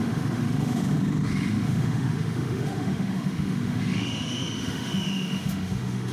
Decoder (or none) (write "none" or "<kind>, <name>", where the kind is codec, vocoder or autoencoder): autoencoder, DAC-VAE